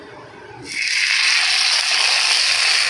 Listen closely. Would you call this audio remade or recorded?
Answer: recorded